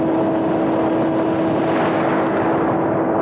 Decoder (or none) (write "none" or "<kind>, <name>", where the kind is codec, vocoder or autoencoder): none